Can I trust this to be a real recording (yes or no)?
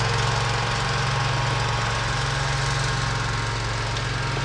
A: yes